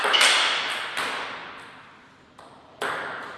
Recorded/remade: recorded